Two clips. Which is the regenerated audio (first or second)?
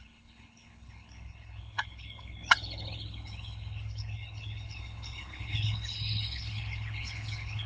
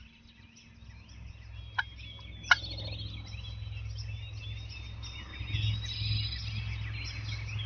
first